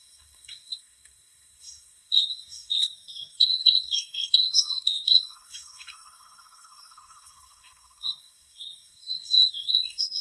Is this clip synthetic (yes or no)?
yes